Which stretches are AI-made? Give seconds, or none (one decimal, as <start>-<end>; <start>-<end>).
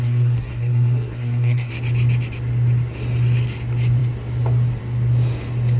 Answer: 0.0-1.7